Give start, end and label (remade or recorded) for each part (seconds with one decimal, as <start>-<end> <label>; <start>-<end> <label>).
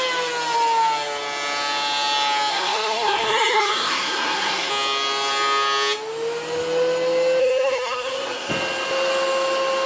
0.0-2.5 recorded; 2.5-4.7 remade; 4.7-7.4 recorded; 7.4-8.5 remade; 8.5-9.9 recorded